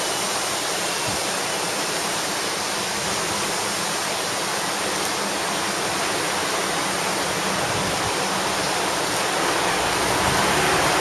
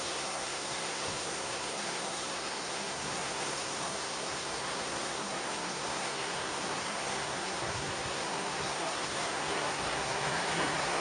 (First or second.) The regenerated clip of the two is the second